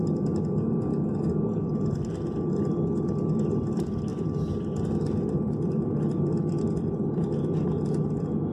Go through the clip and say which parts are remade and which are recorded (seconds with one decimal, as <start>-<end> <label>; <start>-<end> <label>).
0.0-0.9 recorded; 0.9-1.7 remade; 1.7-8.5 recorded